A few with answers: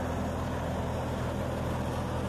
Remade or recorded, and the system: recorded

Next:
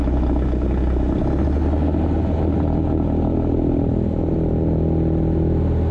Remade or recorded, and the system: recorded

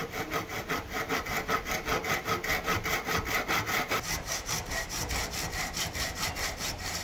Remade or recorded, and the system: recorded